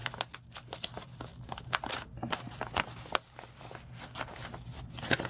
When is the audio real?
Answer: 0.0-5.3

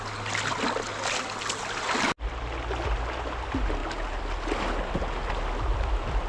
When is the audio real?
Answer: 0.0-6.3